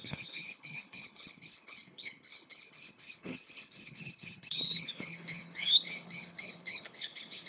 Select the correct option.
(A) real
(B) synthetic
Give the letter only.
B